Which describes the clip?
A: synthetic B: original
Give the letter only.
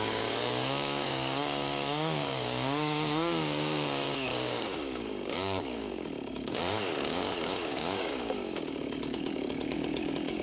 A